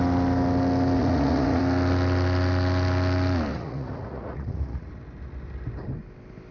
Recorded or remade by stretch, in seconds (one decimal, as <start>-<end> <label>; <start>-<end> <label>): 0.0-1.0 recorded; 1.0-1.6 remade; 1.6-3.5 recorded; 3.5-4.9 remade; 4.9-6.5 recorded